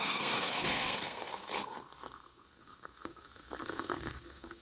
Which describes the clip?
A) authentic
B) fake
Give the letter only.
B